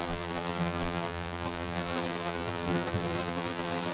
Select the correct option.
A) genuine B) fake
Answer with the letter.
B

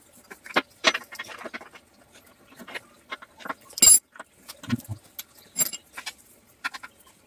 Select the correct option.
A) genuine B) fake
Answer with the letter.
A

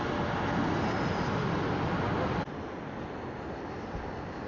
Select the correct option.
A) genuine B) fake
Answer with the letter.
A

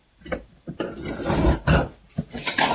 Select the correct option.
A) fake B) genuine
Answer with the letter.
B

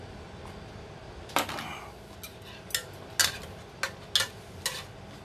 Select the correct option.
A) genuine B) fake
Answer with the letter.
A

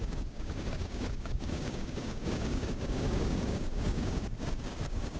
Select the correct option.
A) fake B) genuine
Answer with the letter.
A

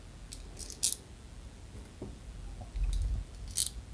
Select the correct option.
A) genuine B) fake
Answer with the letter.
A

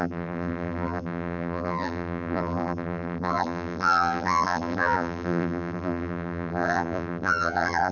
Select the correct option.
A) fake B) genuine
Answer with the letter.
A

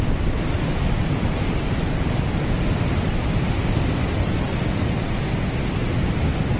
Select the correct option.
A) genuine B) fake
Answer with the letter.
A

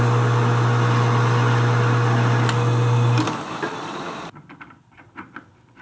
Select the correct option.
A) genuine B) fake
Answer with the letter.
A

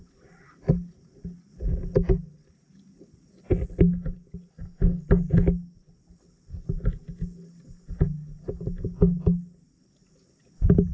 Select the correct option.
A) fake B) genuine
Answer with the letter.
B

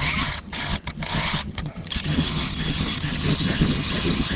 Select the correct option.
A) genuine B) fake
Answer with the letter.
B